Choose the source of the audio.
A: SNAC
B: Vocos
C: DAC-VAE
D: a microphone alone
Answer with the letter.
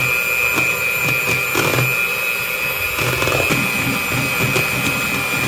D